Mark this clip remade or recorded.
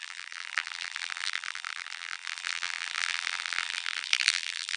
remade